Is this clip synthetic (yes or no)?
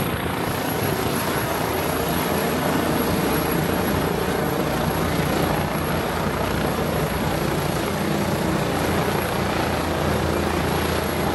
no